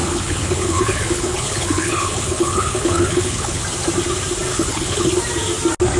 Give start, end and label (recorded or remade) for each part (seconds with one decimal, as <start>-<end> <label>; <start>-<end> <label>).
0.0-3.6 remade; 3.6-4.5 recorded; 4.5-5.1 remade; 5.1-6.0 recorded